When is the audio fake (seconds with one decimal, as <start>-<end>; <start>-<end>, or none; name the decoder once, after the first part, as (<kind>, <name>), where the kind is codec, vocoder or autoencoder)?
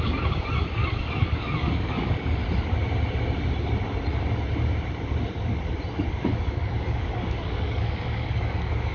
0.0-2.4 (codec, DAC); 6.1-8.9